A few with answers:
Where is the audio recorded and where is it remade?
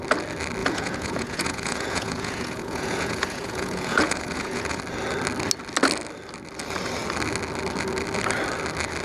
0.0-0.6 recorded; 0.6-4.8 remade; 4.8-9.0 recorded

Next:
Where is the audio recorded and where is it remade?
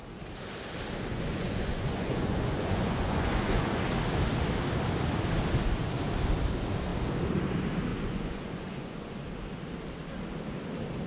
0.0-1.1 recorded; 1.1-3.9 remade; 3.9-7.9 recorded; 7.9-9.3 remade; 9.3-11.1 recorded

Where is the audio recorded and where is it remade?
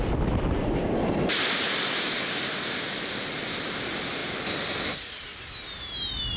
0.0-6.4 recorded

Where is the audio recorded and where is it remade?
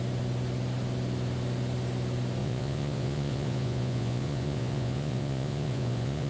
0.0-2.4 recorded; 2.4-6.3 remade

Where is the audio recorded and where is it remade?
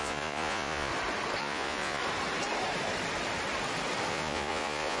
0.0-0.9 remade; 0.9-1.4 recorded; 1.4-2.0 remade; 2.0-4.1 recorded; 4.1-5.0 remade